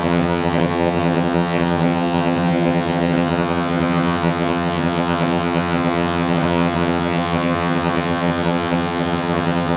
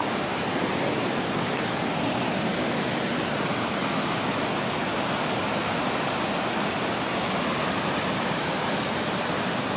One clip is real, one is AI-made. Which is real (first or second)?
second